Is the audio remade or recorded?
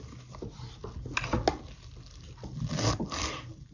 recorded